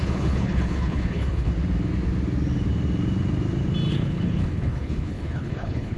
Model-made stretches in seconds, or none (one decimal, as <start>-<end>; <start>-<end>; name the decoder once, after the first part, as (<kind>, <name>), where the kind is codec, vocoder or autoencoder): 0.0-1.5 (codec, HILCodec); 3.9-6.0